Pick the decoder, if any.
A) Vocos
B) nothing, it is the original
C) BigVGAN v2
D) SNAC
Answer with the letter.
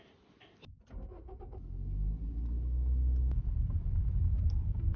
B